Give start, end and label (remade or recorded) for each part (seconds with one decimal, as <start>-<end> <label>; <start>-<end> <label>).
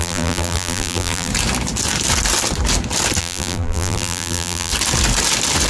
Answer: 0.0-1.3 remade; 1.3-3.2 recorded; 3.2-4.7 remade; 4.7-5.7 recorded